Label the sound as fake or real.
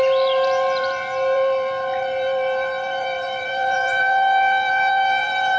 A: fake